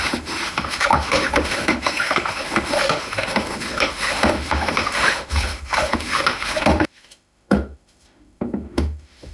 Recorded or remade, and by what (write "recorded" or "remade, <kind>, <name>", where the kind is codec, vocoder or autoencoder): remade, autoencoder, DAC-VAE